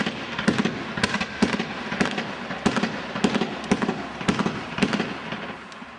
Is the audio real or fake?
real